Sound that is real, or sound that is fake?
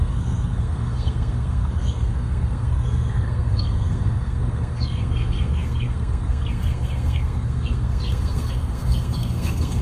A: fake